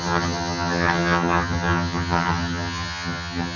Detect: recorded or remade remade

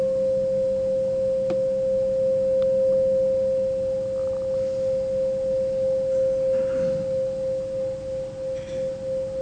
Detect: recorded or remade recorded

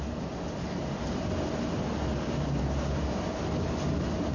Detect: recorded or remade recorded